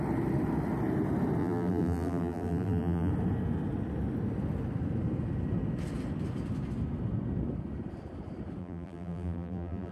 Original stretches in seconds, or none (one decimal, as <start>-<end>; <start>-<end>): 0.0-1.4; 3.1-8.6